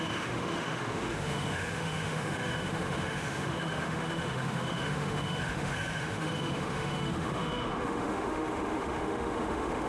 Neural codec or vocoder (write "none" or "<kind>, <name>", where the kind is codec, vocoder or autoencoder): autoencoder, DAC-VAE